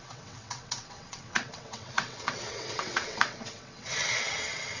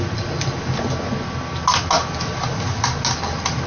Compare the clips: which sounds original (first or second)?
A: second